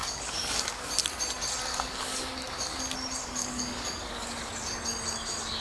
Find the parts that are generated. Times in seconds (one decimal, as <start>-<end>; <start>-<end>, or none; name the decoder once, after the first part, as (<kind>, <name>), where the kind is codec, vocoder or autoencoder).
0.0-0.9 (codec, DAC); 1.7-2.8; 3.2-4.5